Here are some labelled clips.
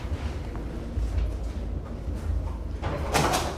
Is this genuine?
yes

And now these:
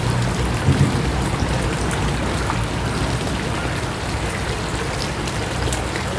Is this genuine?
yes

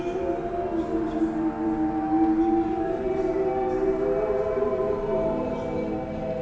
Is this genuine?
yes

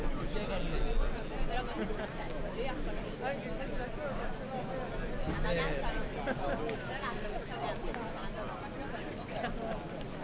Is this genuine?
yes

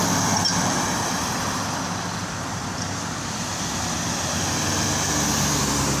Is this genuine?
no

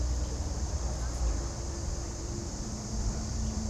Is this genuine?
no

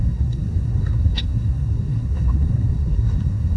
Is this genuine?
no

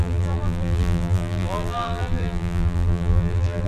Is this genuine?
no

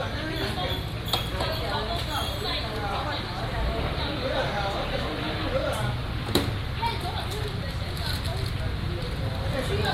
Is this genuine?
yes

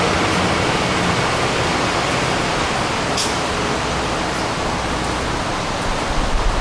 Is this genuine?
yes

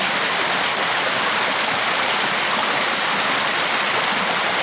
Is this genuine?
yes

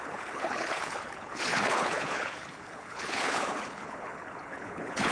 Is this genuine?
no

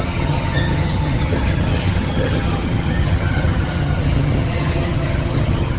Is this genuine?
no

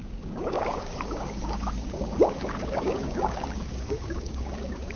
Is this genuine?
no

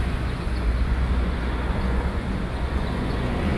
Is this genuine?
no